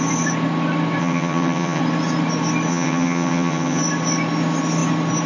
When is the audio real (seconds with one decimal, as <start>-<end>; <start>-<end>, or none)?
0.0-1.0; 1.8-2.7; 3.8-5.3